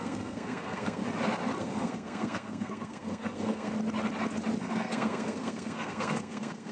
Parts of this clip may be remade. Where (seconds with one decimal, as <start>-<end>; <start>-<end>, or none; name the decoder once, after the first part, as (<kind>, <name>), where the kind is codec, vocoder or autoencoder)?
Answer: 0.0-1.0 (codec, SNAC); 1.6-3.7; 4.6-6.7